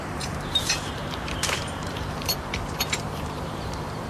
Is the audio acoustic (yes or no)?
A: no